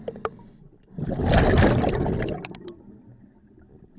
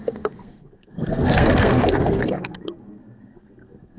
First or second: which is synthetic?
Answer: second